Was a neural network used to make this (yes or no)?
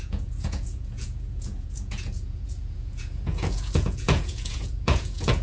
yes